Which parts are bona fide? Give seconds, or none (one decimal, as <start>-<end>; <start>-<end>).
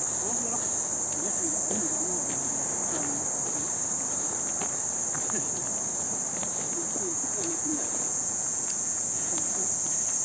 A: 0.0-7.1; 9.7-10.2